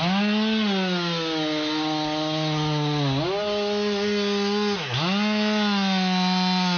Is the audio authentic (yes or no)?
yes